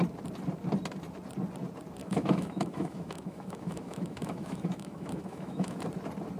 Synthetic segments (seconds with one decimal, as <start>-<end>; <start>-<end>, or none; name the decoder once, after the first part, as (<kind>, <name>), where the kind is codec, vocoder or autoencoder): 2.0-5.8 (autoencoder, DAC-VAE)